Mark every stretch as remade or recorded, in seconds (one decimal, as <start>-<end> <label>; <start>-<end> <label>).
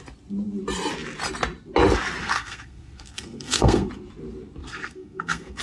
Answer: 0.0-2.2 recorded; 2.2-3.9 remade; 3.9-4.6 recorded; 4.6-5.6 remade